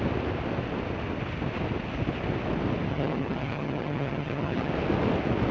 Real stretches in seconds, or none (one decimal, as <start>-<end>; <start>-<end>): 0.0-2.9; 4.7-5.5